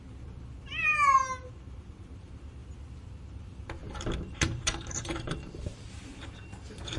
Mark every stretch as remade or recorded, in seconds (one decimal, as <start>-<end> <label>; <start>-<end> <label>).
0.0-2.6 remade; 2.6-3.2 recorded; 3.2-3.8 remade; 3.8-4.3 recorded; 4.3-7.0 remade

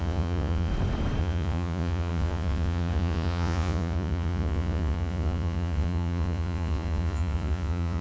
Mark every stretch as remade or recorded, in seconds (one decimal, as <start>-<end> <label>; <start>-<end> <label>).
0.0-0.7 remade; 0.7-1.2 recorded; 1.2-8.0 remade

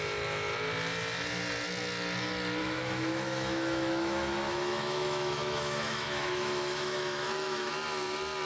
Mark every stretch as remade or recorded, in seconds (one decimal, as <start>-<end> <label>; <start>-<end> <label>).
0.0-2.6 recorded; 2.6-7.7 remade; 7.7-8.5 recorded

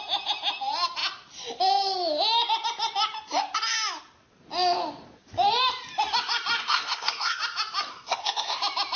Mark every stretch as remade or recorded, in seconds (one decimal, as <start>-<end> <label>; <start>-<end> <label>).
0.0-6.6 recorded; 6.6-7.4 remade; 7.4-7.9 recorded; 7.9-8.6 remade; 8.6-9.0 recorded

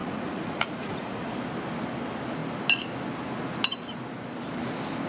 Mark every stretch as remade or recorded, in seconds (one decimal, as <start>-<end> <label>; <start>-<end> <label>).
0.0-1.4 remade; 1.4-5.1 recorded

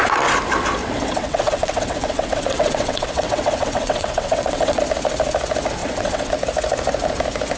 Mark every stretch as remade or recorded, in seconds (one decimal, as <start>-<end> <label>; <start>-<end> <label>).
0.0-0.8 recorded; 0.8-4.8 remade; 4.8-5.8 recorded; 5.8-6.3 remade; 6.3-7.6 recorded